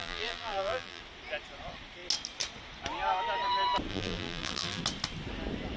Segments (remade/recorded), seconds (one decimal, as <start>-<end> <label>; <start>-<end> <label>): 0.0-1.0 remade; 1.0-3.9 recorded; 3.9-4.8 remade; 4.8-5.8 recorded